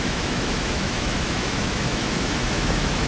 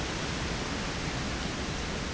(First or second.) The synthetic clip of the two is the first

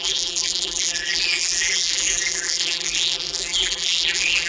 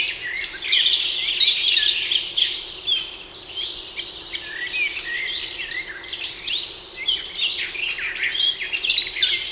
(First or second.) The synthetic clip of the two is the first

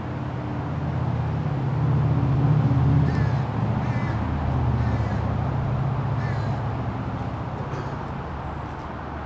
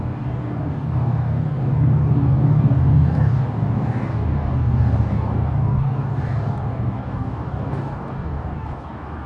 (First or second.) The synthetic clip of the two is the second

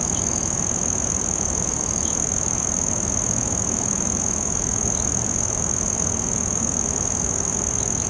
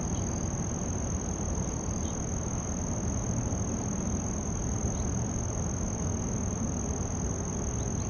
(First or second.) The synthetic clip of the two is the first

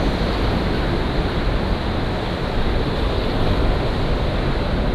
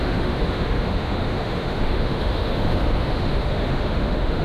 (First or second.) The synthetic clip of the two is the second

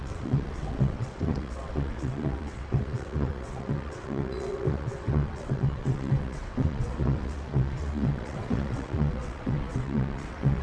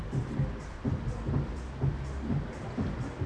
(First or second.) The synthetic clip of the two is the first